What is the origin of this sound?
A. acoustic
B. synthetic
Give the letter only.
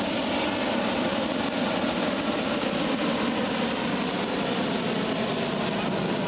A